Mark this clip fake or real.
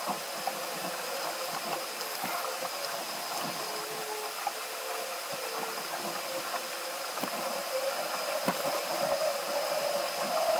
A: real